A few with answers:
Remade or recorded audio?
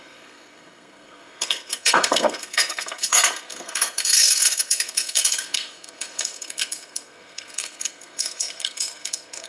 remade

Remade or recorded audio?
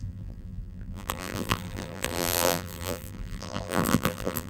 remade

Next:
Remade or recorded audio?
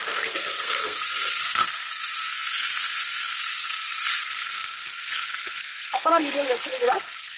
remade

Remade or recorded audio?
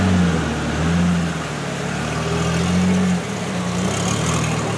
recorded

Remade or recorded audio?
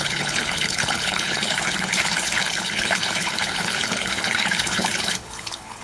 remade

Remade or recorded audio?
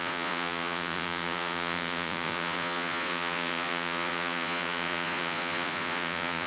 remade